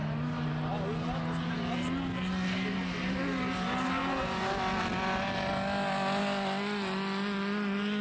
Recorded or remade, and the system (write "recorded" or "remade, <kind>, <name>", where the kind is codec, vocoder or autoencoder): recorded